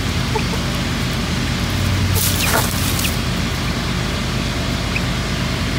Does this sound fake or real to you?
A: real